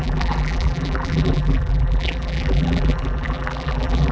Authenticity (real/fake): fake